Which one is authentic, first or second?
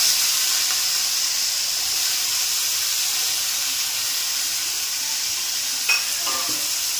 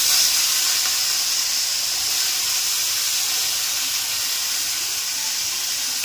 second